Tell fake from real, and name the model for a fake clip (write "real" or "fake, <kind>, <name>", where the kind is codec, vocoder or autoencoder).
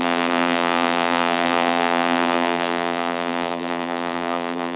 fake, vocoder, BigVGAN v2